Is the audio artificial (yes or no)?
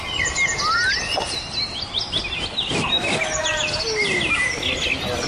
no